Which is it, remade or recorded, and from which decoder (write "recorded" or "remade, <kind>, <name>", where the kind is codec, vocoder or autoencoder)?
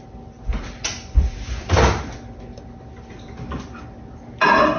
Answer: recorded